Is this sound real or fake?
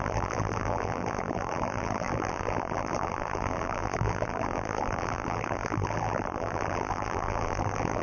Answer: fake